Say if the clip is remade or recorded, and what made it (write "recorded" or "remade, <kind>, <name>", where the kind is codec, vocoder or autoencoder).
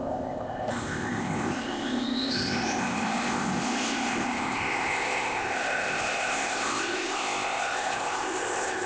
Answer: remade, codec, ZipCodec